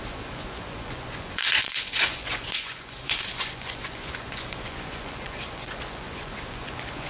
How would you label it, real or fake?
fake